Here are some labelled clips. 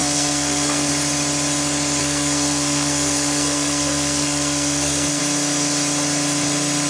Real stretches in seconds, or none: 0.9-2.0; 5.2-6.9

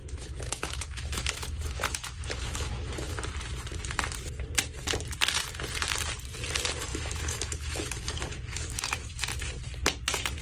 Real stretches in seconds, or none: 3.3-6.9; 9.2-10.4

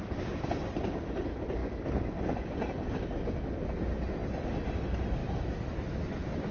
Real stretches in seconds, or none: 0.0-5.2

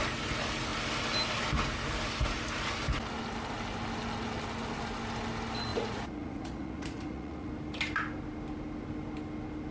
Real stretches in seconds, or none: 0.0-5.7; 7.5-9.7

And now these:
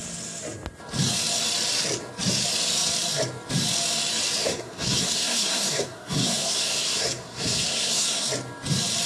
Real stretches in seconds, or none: 0.0-4.4; 8.3-9.1